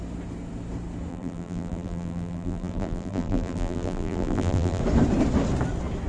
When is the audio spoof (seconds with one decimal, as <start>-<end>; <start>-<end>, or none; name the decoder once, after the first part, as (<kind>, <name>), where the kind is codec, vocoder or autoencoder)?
1.1-4.8 (vocoder, BigVGAN v2)